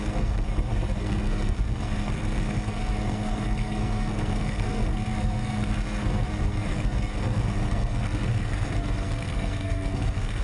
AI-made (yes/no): yes